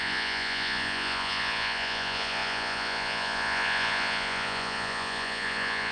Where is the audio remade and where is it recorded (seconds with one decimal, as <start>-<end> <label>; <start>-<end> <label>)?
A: 0.0-5.9 remade